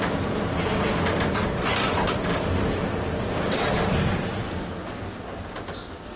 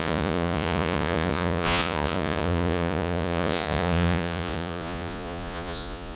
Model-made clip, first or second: second